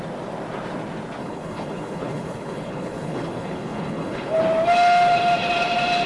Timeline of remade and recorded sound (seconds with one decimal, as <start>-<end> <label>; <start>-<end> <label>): 0.0-1.2 recorded; 1.2-4.4 remade; 4.4-6.1 recorded